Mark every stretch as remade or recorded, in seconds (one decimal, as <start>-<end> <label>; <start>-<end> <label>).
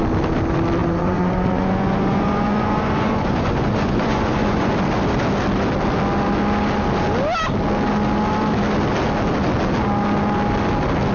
0.0-0.8 recorded; 0.8-4.7 remade; 4.7-11.1 recorded